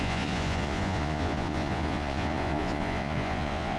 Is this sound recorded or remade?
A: remade